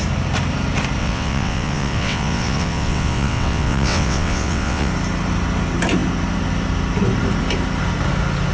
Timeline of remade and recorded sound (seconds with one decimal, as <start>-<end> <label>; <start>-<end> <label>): 0.0-1.0 recorded; 1.0-4.9 remade; 4.9-8.5 recorded

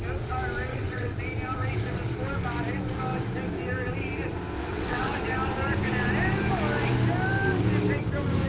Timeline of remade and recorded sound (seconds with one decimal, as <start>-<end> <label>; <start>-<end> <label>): 0.0-0.7 recorded; 0.7-1.2 remade; 1.2-4.6 recorded; 4.6-5.2 remade; 5.2-8.5 recorded

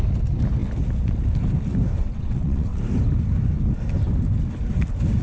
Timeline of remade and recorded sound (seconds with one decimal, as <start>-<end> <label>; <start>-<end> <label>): 0.0-2.0 recorded; 2.0-2.8 remade; 2.8-5.2 recorded